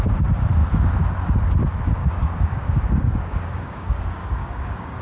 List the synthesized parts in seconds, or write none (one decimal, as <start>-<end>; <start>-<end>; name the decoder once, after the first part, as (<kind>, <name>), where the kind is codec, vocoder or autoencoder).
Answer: 2.0-5.0 (codec, DAC)